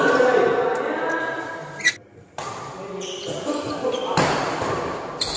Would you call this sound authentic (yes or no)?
yes